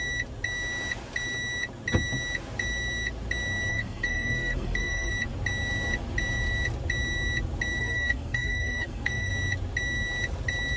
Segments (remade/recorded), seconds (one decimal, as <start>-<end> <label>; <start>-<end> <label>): 0.0-3.7 recorded; 3.7-5.1 remade; 5.1-7.8 recorded; 7.8-9.3 remade; 9.3-10.8 recorded